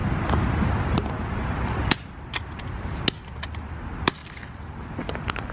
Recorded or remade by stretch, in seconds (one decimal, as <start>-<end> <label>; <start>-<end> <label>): 0.0-5.5 recorded